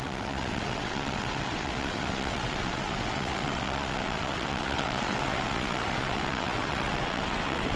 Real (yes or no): no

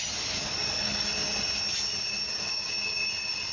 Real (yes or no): yes